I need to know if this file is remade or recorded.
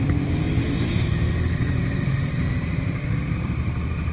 remade